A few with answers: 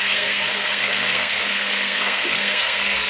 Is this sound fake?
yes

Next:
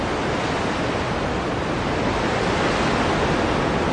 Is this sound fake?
no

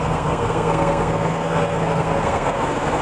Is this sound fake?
yes